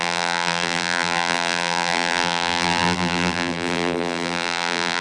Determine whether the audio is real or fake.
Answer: fake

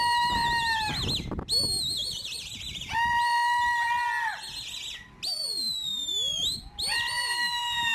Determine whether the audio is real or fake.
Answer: real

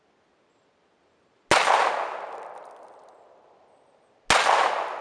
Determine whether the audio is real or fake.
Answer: real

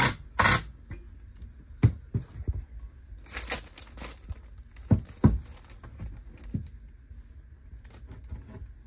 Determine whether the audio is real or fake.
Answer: real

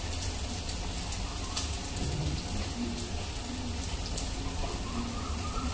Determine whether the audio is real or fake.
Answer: real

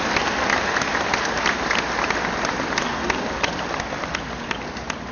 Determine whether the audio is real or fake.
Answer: real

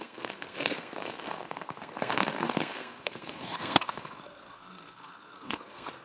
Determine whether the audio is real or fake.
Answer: fake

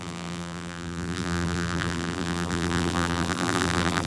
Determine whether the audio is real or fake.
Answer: fake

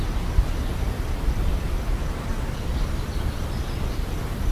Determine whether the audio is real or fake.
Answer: real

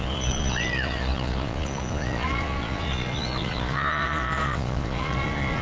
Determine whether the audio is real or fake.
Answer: fake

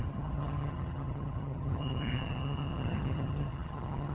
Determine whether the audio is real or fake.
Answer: fake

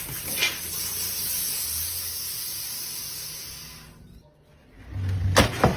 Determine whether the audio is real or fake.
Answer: real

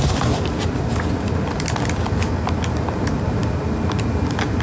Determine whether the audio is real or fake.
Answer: real